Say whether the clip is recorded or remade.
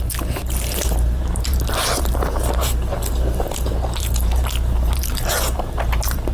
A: remade